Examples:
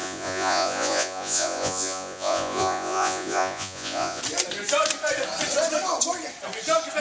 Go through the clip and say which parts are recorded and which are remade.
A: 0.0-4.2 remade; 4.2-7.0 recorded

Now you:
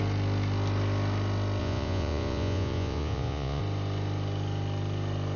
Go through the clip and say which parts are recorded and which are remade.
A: 0.0-1.6 recorded; 1.6-3.6 remade; 3.6-5.4 recorded

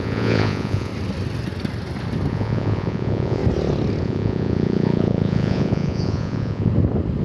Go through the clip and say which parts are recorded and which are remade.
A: 0.0-0.9 remade; 0.9-2.3 recorded; 2.3-3.4 remade; 3.4-4.0 recorded; 4.0-6.7 remade; 6.7-7.2 recorded

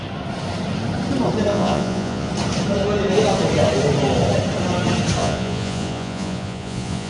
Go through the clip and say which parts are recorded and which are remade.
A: 0.0-1.5 recorded; 1.5-2.3 remade; 2.3-5.2 recorded; 5.2-7.1 remade

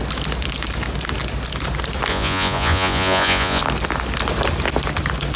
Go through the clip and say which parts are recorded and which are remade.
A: 0.0-2.1 recorded; 2.1-3.6 remade; 3.6-5.4 recorded